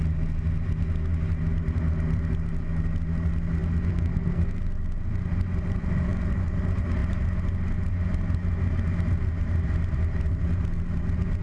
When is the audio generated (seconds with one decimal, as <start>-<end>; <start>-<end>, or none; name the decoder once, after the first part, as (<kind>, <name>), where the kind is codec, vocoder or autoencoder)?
3.9-4.6 (codec, SNAC)